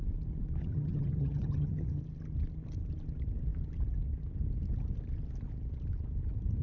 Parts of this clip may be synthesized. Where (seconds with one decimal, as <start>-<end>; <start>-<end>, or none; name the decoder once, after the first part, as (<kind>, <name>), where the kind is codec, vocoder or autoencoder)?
0.6-2.0 (vocoder, HiFi-GAN)